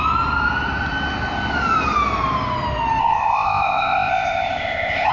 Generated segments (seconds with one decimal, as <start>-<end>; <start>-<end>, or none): 3.0-5.1